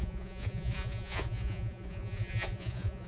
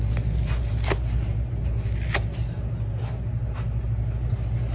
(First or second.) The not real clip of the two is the first